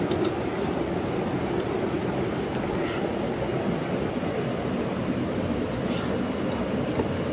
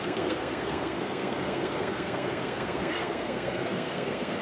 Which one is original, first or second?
first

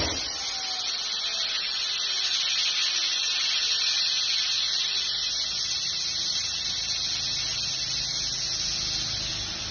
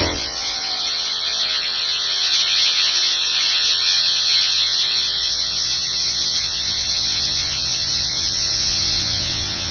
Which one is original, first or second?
first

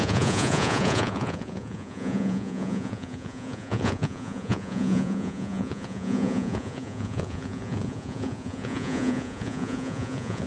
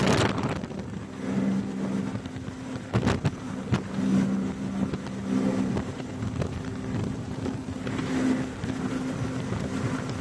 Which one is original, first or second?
second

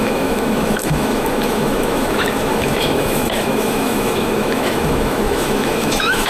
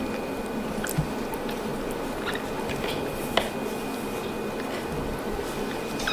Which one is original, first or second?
second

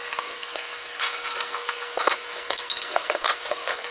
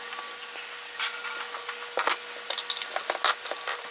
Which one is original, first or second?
second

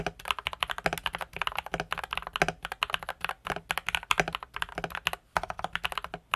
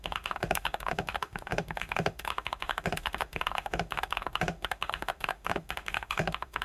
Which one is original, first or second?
first